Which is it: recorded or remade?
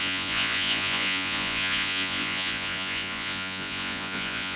remade